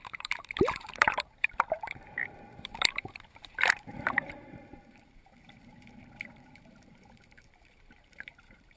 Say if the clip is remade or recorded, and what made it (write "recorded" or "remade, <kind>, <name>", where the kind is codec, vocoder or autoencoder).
remade, vocoder, BigVGAN v2